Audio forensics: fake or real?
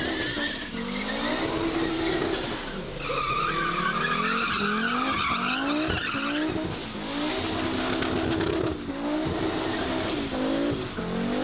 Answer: real